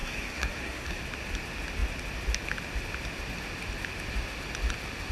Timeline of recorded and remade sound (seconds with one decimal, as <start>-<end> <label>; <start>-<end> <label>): 0.0-1.0 remade; 1.0-5.1 recorded